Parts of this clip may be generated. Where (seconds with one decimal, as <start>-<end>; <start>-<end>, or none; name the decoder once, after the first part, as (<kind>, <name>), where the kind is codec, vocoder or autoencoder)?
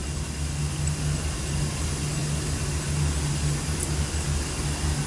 none